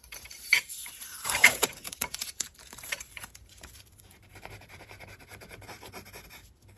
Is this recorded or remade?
remade